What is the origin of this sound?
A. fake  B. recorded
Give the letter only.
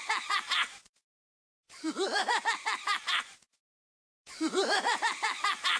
A